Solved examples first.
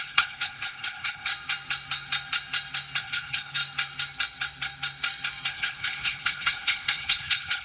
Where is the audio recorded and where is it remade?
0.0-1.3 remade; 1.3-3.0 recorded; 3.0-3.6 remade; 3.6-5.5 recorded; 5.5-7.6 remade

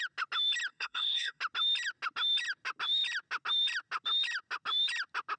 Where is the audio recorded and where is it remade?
0.0-0.7 recorded; 0.7-1.4 remade; 1.4-5.4 recorded

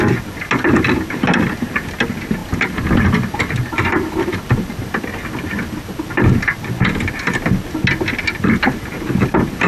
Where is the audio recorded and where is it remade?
0.0-9.7 recorded

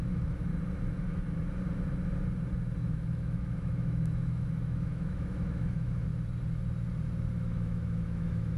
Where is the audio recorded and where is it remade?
0.0-0.5 remade; 0.5-2.8 recorded; 2.8-6.1 remade; 6.1-7.3 recorded; 7.3-8.6 remade

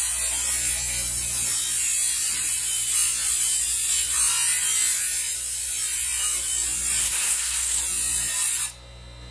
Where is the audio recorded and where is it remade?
0.0-7.0 recorded; 7.0-7.8 remade; 7.8-9.3 recorded

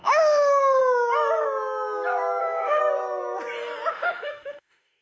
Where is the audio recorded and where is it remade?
0.0-0.8 remade; 0.8-2.4 recorded; 2.4-2.8 remade; 2.8-3.9 recorded; 3.9-5.0 remade